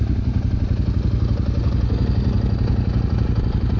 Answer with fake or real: real